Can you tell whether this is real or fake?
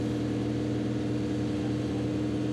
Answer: real